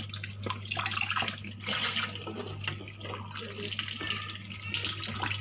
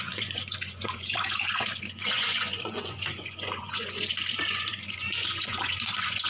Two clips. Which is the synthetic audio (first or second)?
second